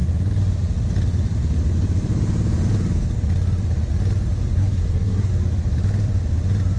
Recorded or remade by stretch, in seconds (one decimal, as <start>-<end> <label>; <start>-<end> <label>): 0.0-4.5 recorded; 4.5-5.3 remade; 5.3-6.8 recorded